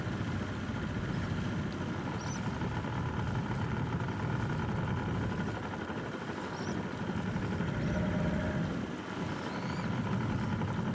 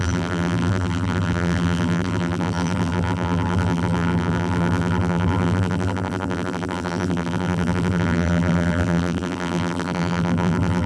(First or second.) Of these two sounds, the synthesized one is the second